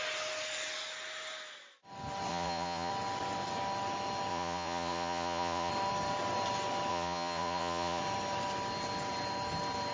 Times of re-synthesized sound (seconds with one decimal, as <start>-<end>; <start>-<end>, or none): 2.3-2.9; 4.3-5.7; 6.9-8.0